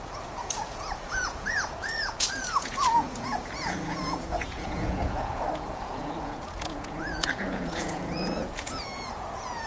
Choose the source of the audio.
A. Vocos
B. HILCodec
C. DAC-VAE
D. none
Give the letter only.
A